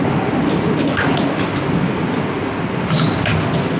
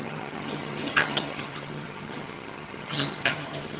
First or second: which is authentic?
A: first